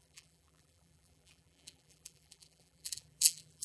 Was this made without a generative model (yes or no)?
no